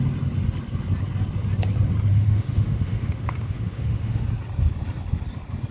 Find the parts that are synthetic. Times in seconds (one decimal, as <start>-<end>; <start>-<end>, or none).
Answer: 2.1-4.3